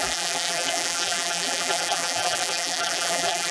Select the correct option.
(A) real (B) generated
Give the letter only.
B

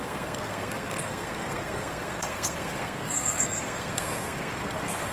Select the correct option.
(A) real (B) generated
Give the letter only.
B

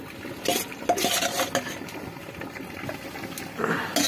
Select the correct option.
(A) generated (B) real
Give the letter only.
B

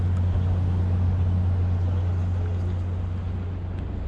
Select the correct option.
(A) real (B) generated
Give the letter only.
A